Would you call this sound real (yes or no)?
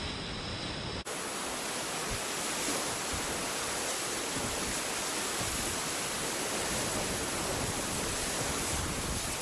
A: yes